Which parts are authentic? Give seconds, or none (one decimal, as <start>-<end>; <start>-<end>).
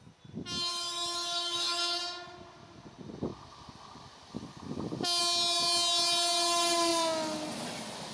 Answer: 0.0-0.7; 2.0-8.1